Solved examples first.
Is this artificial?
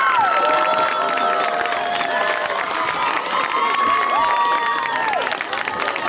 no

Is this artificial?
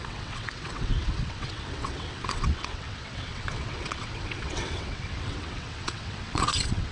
yes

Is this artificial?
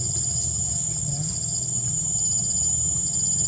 no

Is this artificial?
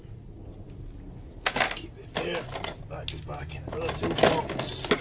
no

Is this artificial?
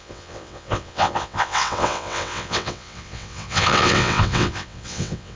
yes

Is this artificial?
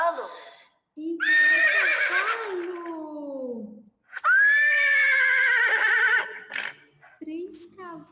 no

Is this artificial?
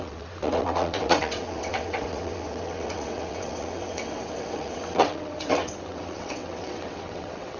yes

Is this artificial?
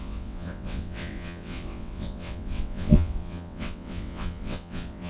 yes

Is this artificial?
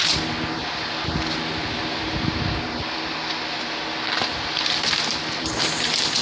no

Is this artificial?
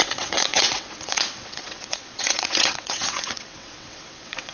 yes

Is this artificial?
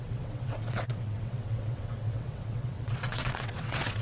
yes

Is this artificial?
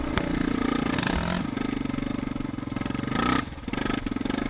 no